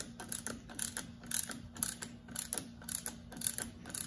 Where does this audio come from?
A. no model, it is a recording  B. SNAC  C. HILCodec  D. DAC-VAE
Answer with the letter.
A